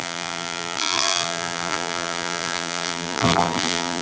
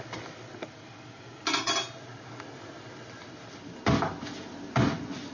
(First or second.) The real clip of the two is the second